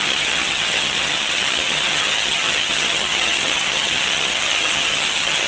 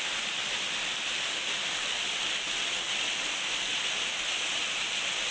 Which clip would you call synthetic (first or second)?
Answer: first